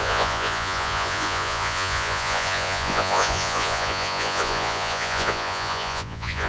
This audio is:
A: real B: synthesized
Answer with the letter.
B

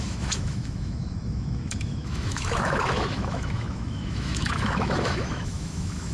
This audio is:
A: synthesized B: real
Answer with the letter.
A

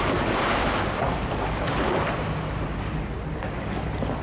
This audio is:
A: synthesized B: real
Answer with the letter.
B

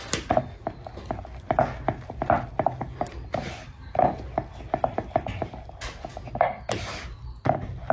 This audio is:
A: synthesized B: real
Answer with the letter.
B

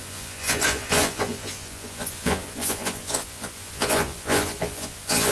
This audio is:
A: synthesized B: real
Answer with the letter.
A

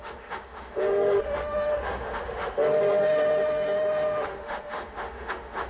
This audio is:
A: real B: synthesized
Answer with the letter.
B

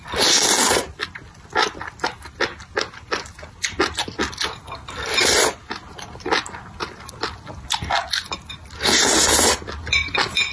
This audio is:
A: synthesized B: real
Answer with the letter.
B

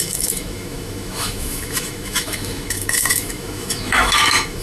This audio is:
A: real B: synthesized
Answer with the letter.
B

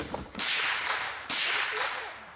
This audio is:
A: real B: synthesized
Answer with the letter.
B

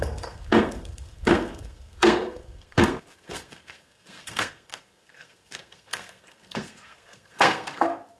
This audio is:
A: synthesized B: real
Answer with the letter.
A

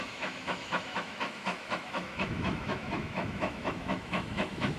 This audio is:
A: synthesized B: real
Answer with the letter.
A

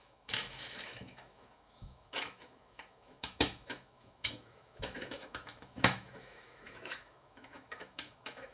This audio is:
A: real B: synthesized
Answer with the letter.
B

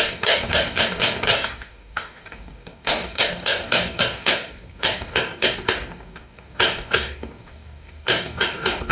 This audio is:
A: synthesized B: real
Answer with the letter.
A